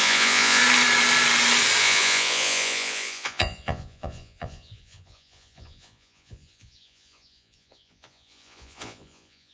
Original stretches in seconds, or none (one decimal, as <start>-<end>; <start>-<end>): 0.6-1.8